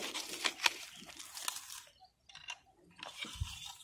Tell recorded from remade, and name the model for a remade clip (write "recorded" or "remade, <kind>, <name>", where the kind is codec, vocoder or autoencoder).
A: recorded